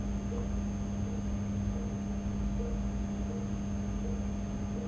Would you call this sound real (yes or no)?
yes